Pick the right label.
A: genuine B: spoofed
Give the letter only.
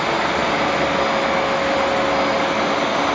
A